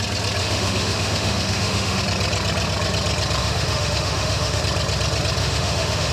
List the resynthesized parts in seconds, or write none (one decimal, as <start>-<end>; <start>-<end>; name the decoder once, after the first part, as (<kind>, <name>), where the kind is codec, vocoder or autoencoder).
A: 0.4-2.0 (autoencoder, DAC-VAE); 3.4-4.6; 5.4-6.1